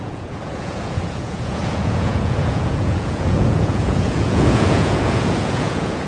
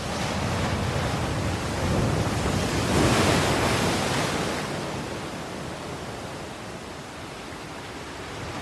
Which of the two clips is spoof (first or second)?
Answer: first